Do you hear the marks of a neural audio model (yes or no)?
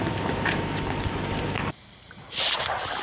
yes